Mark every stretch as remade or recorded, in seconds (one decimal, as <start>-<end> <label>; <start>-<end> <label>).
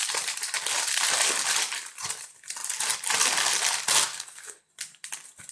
0.0-4.1 recorded; 4.1-4.7 remade; 4.7-5.5 recorded